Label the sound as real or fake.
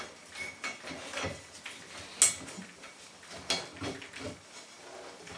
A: real